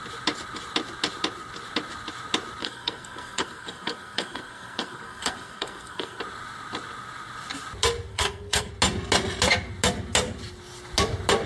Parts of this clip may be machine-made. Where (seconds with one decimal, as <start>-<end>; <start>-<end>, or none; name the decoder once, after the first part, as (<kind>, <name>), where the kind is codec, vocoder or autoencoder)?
2.6-6.2 (codec, SNAC); 8.1-8.7